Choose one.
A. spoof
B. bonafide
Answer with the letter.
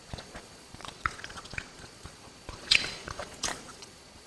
A